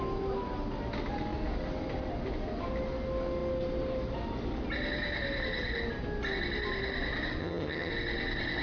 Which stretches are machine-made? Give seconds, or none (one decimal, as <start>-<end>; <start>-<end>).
7.4-7.9